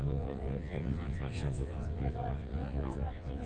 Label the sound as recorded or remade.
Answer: remade